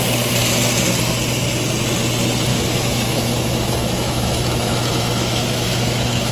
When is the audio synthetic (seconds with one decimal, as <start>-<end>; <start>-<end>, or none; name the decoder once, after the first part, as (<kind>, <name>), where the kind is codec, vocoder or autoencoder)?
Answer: 2.5-6.3 (autoencoder, DAC-VAE)